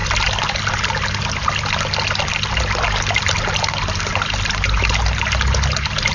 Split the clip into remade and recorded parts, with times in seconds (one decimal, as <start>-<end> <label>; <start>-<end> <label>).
0.0-6.1 recorded